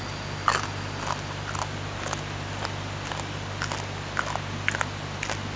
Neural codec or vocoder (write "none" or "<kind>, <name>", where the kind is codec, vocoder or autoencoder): none